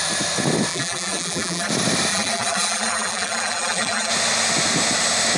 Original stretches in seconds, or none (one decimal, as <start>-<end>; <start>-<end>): 0.0-0.7; 1.7-2.1; 4.1-5.4